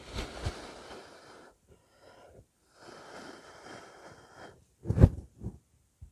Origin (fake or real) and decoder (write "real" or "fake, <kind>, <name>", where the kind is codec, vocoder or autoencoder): real